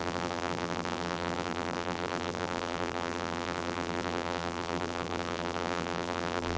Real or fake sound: fake